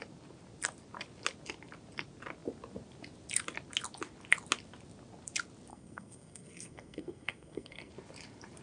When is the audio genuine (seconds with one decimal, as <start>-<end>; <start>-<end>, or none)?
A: 0.0-5.7; 7.9-8.6